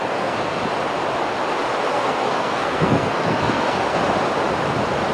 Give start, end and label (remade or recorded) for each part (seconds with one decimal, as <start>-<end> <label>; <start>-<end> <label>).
0.0-0.6 remade; 0.6-1.9 recorded; 1.9-4.0 remade; 4.0-5.1 recorded

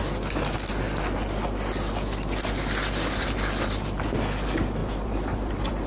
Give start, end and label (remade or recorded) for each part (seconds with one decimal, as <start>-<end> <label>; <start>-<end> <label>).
0.0-4.8 recorded; 4.8-5.9 remade

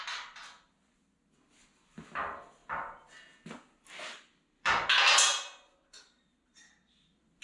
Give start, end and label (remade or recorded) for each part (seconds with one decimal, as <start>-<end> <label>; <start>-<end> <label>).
0.0-7.4 recorded

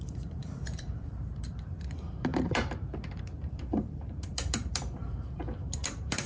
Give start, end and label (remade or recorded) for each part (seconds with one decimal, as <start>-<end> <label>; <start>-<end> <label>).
0.0-6.3 remade